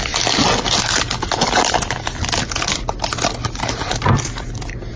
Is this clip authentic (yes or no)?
yes